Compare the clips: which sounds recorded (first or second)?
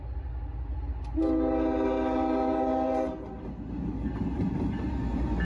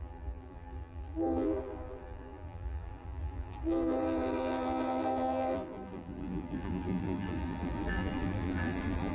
first